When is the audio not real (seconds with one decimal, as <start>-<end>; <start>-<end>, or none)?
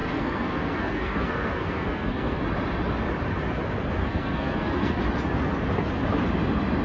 0.0-2.4; 4.0-5.0